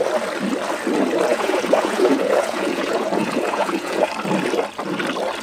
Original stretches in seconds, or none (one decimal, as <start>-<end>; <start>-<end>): 0.0-1.3; 4.1-5.4